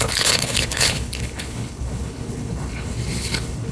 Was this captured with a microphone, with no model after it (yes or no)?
no